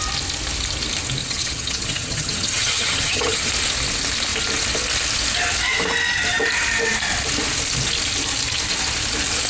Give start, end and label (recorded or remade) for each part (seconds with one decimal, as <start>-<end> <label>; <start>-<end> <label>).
0.0-1.2 recorded; 1.2-3.4 remade; 3.4-9.5 recorded